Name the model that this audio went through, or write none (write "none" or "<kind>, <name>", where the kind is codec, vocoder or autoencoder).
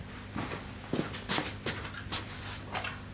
none